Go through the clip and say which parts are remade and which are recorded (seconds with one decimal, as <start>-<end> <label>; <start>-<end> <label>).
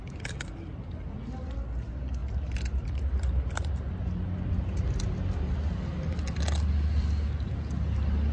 0.0-2.2 recorded; 2.2-3.7 remade; 3.7-8.3 recorded